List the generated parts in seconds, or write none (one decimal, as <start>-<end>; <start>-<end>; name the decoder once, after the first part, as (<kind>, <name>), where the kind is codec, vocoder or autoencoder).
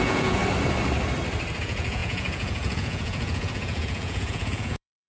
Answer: 0.0-0.4 (vocoder, Vocos); 1.6-5.1